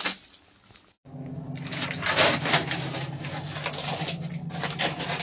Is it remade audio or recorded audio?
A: recorded